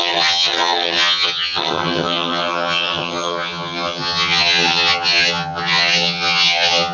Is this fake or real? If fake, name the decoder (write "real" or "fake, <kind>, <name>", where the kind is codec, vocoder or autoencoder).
fake, vocoder, HiFi-GAN